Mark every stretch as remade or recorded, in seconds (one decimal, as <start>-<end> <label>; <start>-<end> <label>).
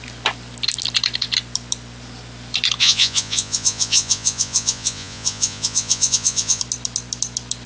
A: 0.0-2.8 recorded; 2.8-6.6 remade; 6.6-7.7 recorded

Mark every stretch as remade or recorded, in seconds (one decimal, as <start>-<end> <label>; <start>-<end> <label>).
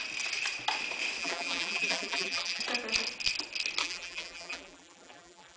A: 0.0-1.2 recorded; 1.2-2.6 remade; 2.6-3.8 recorded; 3.8-5.6 remade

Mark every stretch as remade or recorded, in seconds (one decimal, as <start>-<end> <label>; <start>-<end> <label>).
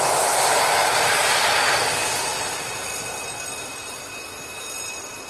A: 0.0-0.8 recorded; 0.8-1.6 remade; 1.6-5.3 recorded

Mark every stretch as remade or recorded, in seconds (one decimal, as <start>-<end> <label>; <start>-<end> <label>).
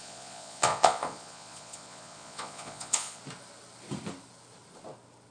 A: 0.0-3.2 remade; 3.2-5.3 recorded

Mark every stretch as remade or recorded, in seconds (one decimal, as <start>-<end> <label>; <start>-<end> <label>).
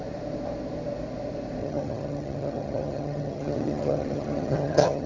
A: 0.0-1.6 recorded; 1.6-5.1 remade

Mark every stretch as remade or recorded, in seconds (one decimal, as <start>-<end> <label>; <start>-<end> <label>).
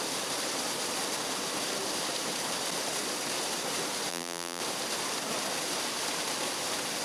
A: 0.0-4.1 recorded; 4.1-4.6 remade; 4.6-7.0 recorded